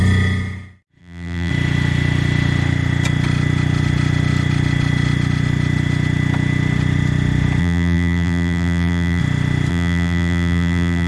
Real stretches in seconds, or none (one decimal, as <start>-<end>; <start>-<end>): 0.0-1.0; 1.5-7.6; 9.2-9.7